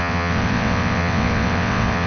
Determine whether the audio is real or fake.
fake